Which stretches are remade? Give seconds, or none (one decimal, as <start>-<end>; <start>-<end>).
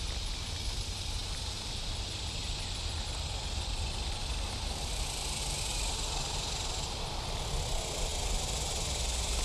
none